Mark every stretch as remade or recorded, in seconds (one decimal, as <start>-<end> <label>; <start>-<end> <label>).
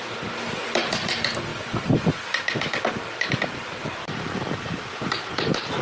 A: 0.0-5.8 recorded